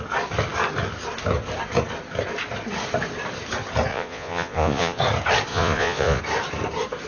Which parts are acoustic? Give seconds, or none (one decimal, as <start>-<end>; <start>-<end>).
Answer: 0.0-3.9; 5.0-5.5; 6.2-7.1